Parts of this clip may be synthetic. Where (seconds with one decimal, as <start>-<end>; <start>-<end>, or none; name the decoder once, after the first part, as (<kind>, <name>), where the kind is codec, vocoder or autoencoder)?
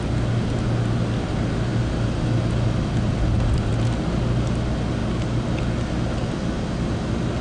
none